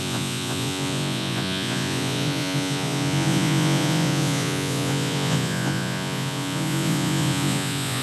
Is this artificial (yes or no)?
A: yes